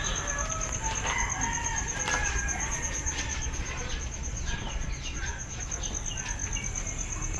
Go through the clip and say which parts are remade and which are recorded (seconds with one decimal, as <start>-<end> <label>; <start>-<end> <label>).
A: 0.0-2.2 recorded; 2.2-5.6 remade; 5.6-7.4 recorded